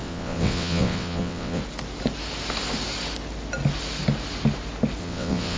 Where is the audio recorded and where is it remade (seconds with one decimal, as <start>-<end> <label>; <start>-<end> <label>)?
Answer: 0.0-1.6 remade; 1.6-5.0 recorded; 5.0-5.6 remade